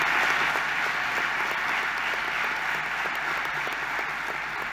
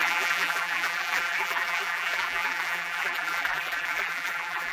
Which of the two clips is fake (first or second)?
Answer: second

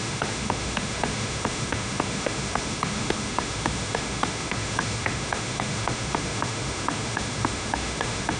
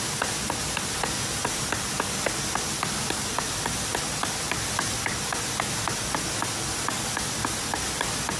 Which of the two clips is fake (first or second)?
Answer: first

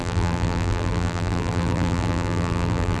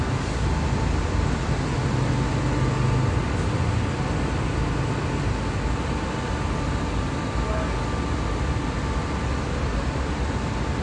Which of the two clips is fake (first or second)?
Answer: first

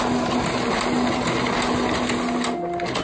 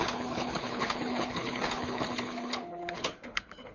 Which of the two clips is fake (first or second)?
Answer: second